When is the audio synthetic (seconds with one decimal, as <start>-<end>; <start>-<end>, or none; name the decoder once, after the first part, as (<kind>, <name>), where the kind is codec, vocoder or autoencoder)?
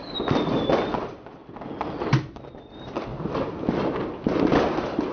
none